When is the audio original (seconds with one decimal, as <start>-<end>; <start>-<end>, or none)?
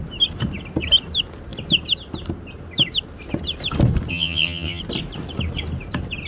0.0-4.1; 4.8-6.3